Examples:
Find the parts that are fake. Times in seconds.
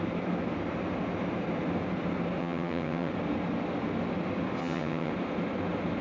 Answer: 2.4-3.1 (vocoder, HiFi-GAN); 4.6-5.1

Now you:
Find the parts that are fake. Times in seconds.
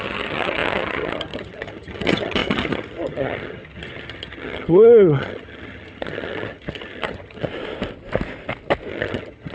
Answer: 0.0-7.5 (vocoder, HiFi-GAN); 8.9-9.5